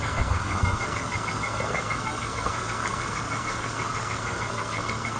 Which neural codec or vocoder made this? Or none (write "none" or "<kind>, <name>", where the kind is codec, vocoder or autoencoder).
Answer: codec, SNAC